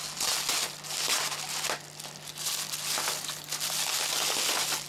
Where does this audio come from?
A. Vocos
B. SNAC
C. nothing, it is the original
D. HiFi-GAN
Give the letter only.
C